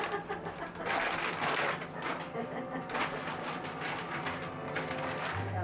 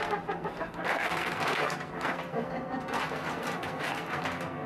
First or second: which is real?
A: first